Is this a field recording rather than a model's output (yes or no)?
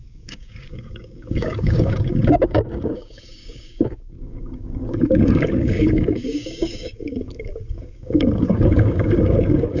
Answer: no